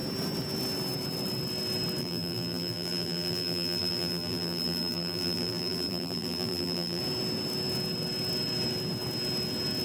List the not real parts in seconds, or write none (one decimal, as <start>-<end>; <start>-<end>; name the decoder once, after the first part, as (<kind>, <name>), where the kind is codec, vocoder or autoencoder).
2.0-7.0 (vocoder, BigVGAN v2)